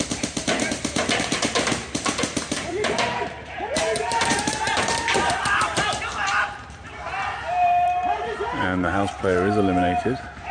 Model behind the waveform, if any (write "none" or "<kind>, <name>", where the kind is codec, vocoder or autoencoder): vocoder, BigVGAN v2